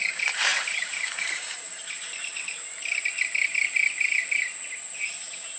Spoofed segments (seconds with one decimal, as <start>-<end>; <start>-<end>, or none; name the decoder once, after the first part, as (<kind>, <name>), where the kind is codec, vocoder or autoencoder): 0.5-1.7 (vocoder, BigVGAN v2)